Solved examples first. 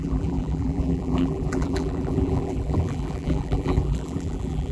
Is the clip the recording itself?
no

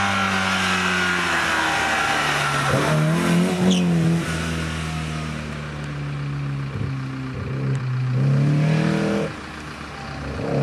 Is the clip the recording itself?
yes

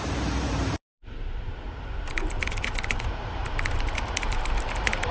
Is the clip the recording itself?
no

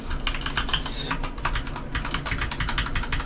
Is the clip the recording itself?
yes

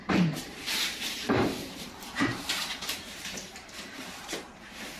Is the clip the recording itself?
no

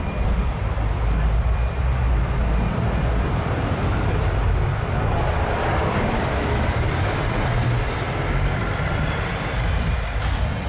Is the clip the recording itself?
no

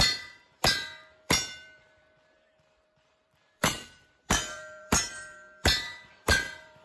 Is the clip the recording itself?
no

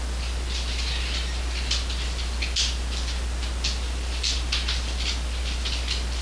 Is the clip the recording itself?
yes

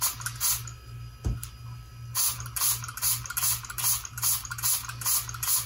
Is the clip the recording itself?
yes